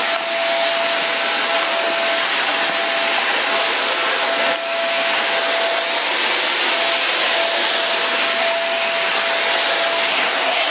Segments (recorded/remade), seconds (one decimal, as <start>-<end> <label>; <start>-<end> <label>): 0.0-10.1 recorded; 10.1-10.7 remade

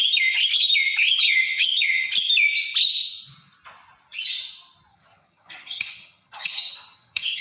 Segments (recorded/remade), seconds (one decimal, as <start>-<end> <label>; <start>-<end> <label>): 0.0-1.0 recorded; 1.0-2.1 remade; 2.1-4.9 recorded; 4.9-7.4 remade

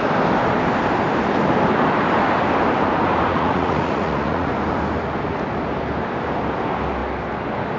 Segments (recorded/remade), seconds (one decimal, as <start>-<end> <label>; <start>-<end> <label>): 0.0-3.3 recorded; 3.3-4.5 remade; 4.5-7.8 recorded

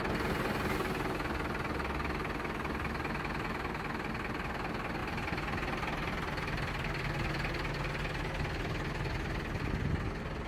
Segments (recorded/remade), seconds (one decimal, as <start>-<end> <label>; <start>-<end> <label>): 0.0-5.0 recorded; 5.0-6.7 remade; 6.7-10.5 recorded

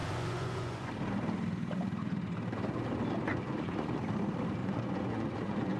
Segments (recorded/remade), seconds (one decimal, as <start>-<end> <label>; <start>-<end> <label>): 0.0-0.9 remade; 0.9-3.3 recorded; 3.3-4.0 remade; 4.0-4.6 recorded; 4.6-5.8 remade

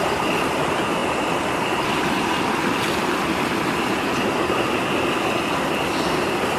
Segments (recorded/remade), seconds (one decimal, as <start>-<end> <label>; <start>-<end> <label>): 0.0-6.6 recorded

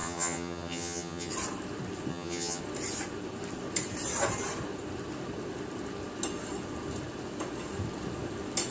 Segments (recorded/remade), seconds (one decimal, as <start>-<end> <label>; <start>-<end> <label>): 0.0-1.3 remade; 1.3-2.1 recorded; 2.1-2.6 remade; 2.6-8.7 recorded

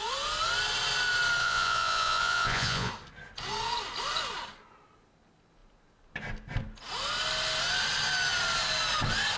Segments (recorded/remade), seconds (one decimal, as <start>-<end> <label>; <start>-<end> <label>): 0.0-1.4 recorded; 1.4-2.9 remade; 2.9-9.4 recorded